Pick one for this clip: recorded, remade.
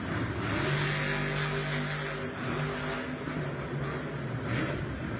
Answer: recorded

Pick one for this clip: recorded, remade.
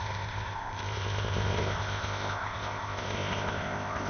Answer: remade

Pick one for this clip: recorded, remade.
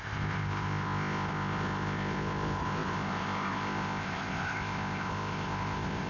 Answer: remade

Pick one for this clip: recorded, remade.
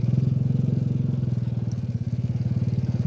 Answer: recorded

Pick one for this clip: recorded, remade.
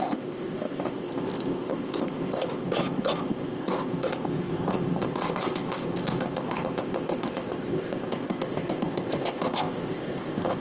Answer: remade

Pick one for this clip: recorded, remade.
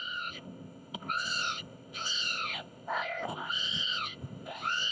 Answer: remade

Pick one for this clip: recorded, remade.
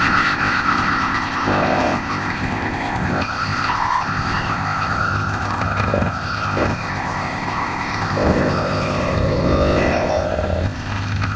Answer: remade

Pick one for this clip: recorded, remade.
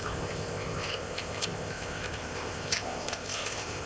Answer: remade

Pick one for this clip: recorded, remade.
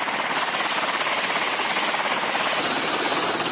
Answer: recorded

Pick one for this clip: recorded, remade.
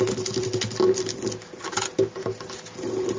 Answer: recorded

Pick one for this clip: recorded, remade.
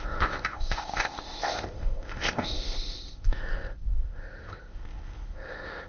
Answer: remade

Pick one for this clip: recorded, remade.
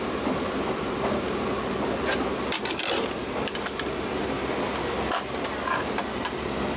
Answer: recorded